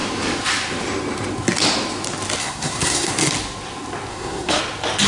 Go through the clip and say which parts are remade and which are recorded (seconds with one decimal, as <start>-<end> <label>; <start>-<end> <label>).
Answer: 0.0-2.4 recorded; 2.4-3.1 remade; 3.1-4.1 recorded; 4.1-4.6 remade; 4.6-5.1 recorded